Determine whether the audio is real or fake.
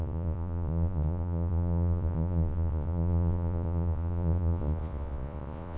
fake